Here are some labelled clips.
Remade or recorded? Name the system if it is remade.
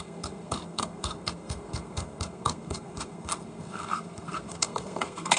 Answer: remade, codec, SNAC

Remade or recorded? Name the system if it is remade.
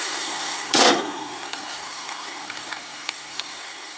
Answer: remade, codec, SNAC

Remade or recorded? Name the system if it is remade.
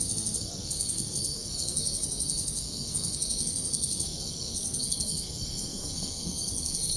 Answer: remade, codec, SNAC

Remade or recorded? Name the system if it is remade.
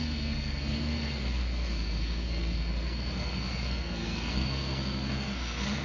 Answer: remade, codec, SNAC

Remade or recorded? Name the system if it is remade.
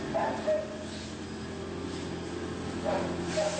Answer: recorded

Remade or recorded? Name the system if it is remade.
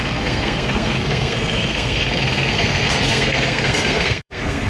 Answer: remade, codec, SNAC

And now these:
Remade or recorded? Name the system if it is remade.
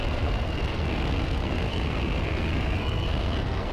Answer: remade, codec, SNAC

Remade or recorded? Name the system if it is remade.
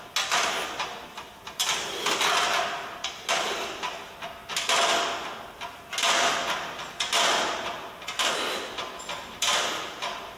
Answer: recorded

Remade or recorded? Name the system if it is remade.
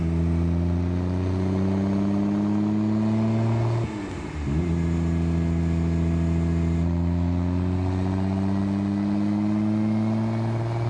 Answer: recorded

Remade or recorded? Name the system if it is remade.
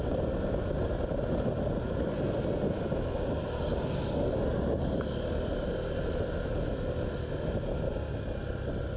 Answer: recorded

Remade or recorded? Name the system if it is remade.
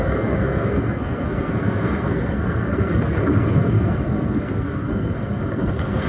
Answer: remade, codec, SNAC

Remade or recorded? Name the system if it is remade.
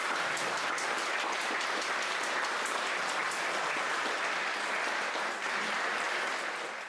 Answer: recorded